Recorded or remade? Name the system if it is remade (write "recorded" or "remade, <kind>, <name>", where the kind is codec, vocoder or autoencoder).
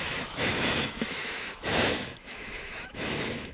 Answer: remade, autoencoder, DAC-VAE